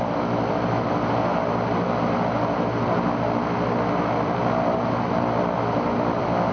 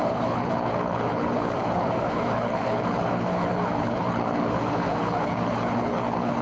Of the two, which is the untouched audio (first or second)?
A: first